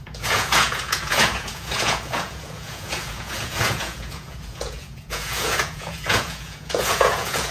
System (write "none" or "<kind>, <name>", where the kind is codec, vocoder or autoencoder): vocoder, Vocos